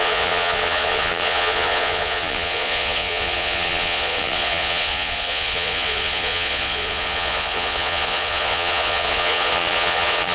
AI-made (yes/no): yes